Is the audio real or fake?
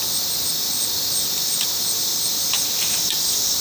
real